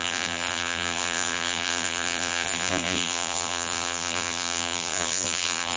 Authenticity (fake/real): fake